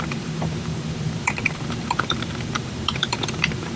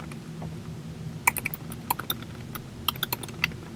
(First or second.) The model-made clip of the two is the first